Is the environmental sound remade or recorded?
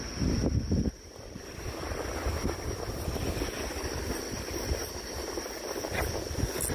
recorded